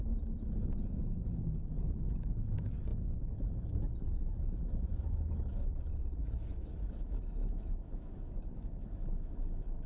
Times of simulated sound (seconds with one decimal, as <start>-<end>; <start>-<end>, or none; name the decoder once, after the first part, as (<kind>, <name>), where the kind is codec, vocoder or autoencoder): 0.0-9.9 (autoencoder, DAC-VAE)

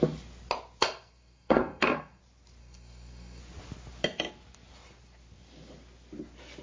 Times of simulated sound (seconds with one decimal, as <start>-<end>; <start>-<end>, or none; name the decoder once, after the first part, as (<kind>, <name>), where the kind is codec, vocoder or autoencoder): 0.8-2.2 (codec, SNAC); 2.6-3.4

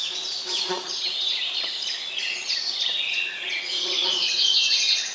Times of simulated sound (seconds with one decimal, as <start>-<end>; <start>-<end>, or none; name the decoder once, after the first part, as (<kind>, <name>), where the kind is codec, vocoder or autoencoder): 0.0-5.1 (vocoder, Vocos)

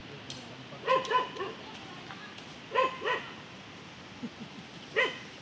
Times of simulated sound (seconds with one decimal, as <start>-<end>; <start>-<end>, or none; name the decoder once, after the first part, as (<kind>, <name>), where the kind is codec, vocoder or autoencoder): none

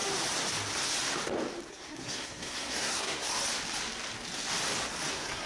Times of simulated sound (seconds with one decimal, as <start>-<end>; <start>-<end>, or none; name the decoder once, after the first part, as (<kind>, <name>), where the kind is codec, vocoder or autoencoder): 1.7-3.3 (codec, SNAC); 5.1-5.5

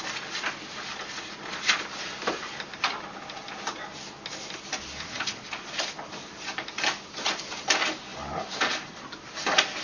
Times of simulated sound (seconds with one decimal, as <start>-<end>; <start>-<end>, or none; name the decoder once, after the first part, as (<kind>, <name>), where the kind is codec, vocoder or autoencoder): none

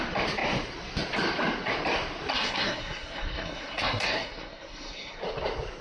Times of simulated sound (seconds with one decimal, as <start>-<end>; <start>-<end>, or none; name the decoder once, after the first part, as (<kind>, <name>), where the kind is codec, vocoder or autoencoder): 2.3-5.2 (codec, SNAC)